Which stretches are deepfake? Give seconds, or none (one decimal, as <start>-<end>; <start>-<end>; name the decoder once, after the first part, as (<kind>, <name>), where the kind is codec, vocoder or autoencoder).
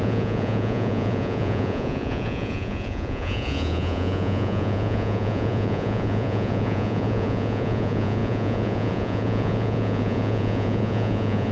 0.0-11.5 (vocoder, Vocos)